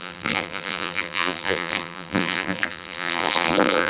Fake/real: fake